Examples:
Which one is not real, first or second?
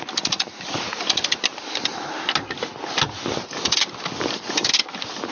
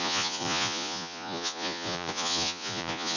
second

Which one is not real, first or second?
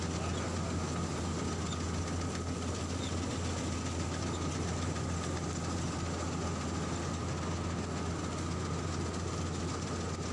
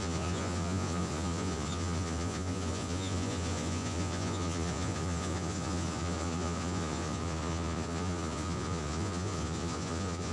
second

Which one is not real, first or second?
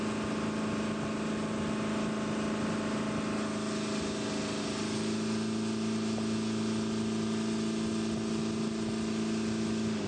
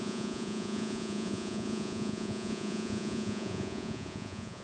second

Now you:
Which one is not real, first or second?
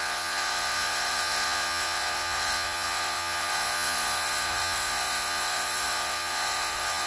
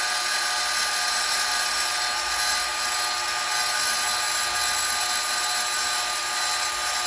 first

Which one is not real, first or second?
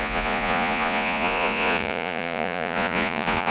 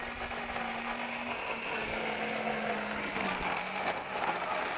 first